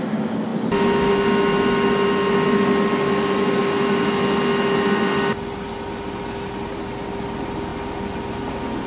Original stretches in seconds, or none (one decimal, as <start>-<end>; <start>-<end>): 0.0-8.9